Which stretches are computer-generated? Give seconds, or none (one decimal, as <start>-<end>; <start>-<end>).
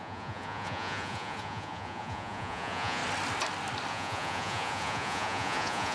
0.0-3.0; 3.9-5.9